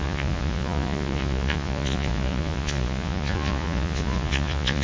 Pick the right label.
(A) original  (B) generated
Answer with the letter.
B